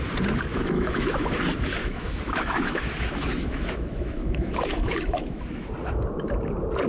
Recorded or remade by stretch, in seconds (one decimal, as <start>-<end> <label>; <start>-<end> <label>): 0.0-0.5 recorded; 0.5-1.4 remade; 1.4-1.8 recorded; 1.8-5.7 remade; 5.7-6.9 recorded